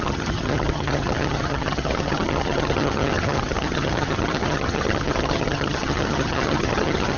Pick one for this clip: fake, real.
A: fake